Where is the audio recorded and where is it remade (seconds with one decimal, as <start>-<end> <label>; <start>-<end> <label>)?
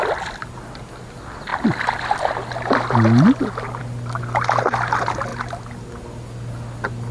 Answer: 0.0-7.1 recorded